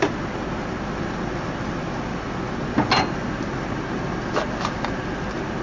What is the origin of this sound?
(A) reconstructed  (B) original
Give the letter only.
B